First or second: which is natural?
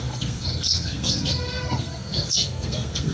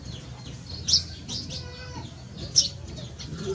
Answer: second